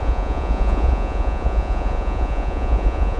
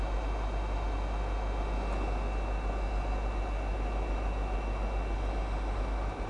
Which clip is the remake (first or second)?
first